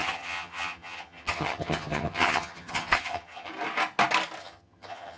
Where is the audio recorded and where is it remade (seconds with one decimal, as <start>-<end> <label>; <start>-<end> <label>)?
0.0-3.5 remade; 3.5-4.4 recorded; 4.4-5.2 remade